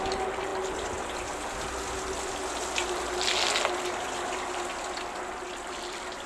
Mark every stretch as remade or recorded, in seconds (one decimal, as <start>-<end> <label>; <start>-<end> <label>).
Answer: 0.0-6.3 recorded